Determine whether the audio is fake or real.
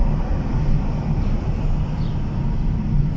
real